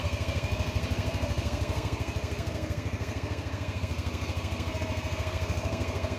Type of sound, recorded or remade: remade